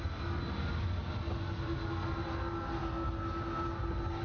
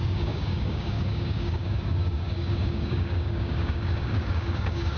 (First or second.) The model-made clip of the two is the second